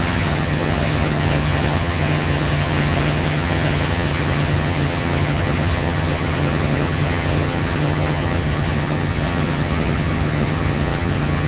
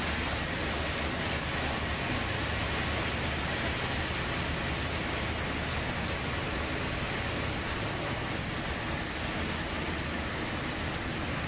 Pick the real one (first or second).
second